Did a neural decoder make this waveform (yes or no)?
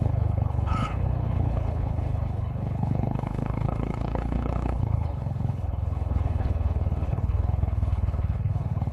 yes